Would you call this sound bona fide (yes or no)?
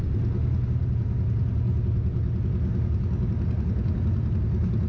yes